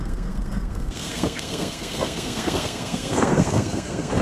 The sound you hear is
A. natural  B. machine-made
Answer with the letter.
B